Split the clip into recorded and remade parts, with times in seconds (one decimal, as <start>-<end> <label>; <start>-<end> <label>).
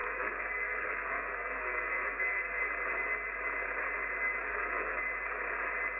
0.0-2.6 remade; 2.6-4.5 recorded; 4.5-5.0 remade; 5.0-6.0 recorded